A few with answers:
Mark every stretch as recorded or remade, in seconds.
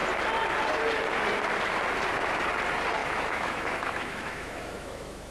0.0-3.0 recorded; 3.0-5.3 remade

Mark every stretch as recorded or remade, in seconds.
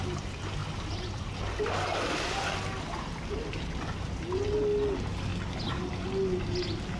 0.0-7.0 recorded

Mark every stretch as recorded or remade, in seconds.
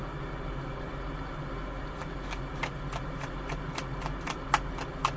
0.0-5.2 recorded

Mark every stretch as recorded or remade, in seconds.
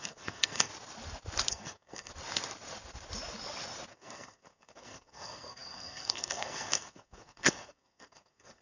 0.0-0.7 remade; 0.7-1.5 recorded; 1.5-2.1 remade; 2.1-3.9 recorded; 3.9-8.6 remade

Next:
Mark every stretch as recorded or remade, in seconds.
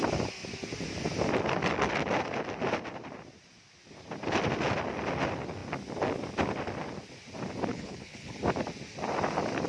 0.0-7.7 recorded; 7.7-8.4 remade; 8.4-9.7 recorded